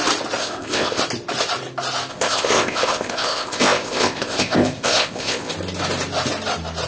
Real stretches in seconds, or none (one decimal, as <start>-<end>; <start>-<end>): 0.0-0.4; 1.0-2.1; 5.5-6.9